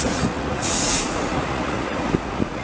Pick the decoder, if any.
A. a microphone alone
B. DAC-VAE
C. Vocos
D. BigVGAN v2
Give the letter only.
C